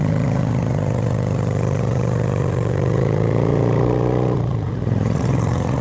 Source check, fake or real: fake